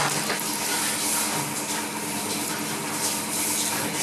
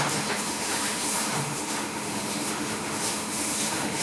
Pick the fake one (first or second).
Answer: second